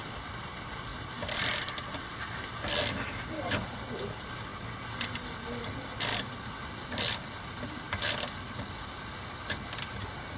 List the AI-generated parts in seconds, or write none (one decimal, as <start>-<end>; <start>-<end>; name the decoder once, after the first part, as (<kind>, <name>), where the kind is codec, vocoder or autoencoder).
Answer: none